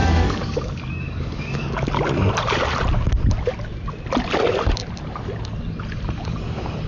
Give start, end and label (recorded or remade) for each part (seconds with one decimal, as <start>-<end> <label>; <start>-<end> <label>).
0.0-1.9 remade; 1.9-6.9 recorded